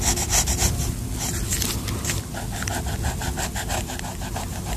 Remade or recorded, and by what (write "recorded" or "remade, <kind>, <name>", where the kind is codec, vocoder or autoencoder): recorded